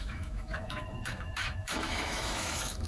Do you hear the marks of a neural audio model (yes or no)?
yes